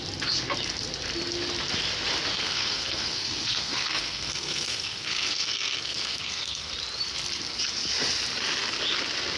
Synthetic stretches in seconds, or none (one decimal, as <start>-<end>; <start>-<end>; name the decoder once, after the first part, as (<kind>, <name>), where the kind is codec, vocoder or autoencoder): 2.3-6.7 (codec, SNAC)